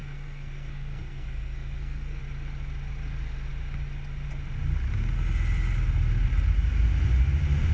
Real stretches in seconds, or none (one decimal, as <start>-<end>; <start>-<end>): 2.2-7.7